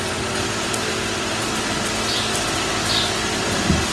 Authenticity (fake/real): real